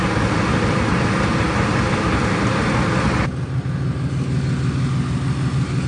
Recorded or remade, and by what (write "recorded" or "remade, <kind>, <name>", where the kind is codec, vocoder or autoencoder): recorded